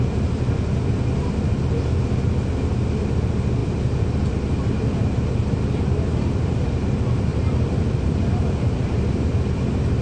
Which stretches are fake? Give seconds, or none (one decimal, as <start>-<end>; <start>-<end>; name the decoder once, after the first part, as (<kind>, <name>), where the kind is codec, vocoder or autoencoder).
3.6-4.3 (vocoder, BigVGAN v2); 5.4-6.7; 7.3-9.2